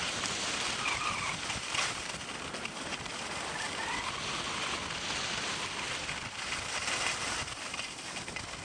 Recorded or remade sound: recorded